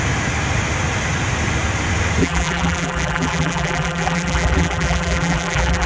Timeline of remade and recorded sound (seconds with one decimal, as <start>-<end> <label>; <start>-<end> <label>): 0.0-2.2 recorded; 2.2-5.9 remade